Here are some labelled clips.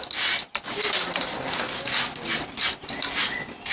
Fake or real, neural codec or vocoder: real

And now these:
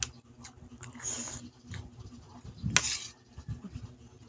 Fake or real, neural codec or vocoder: real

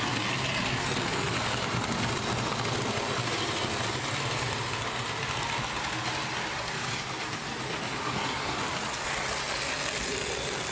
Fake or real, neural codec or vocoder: real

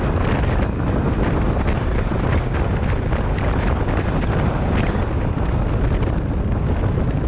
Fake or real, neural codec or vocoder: real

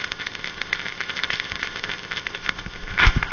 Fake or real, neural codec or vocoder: fake, codec, ZipCodec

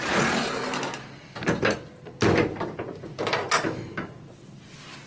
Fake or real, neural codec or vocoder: real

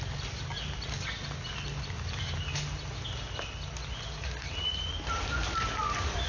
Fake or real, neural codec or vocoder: real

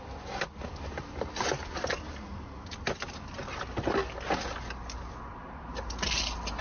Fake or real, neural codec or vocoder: real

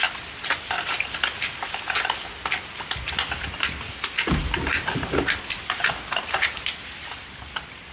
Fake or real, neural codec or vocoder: real